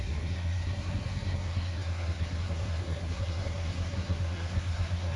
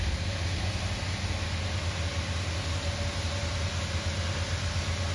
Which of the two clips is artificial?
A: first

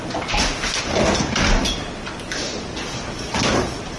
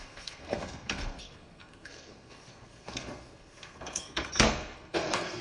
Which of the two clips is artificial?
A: second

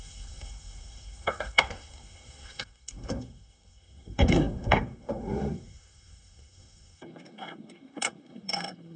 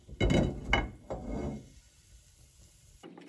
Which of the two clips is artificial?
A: first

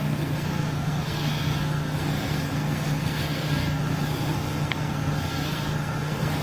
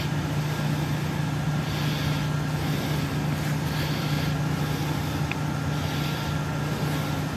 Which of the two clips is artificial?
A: first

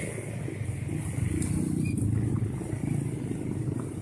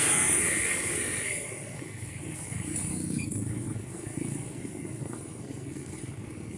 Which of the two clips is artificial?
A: second